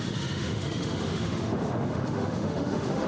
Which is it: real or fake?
fake